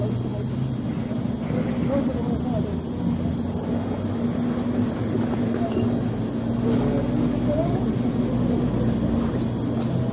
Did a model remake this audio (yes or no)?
no